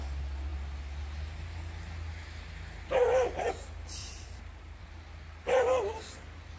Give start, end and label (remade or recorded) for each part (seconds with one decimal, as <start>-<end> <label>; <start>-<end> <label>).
0.0-4.0 recorded; 4.0-4.8 remade; 4.8-6.6 recorded

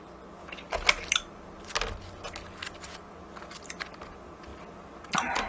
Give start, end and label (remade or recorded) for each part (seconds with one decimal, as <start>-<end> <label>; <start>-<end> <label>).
0.0-5.5 recorded

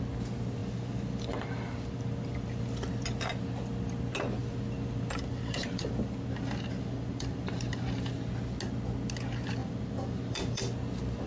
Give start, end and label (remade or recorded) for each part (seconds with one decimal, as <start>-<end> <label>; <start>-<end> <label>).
0.0-0.6 recorded; 0.6-2.9 remade; 2.9-4.4 recorded; 4.4-8.1 remade; 8.1-9.6 recorded; 9.6-10.6 remade; 10.6-11.3 recorded

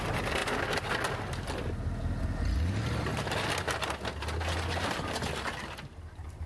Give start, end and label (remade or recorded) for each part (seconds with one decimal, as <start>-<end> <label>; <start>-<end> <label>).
0.0-6.5 recorded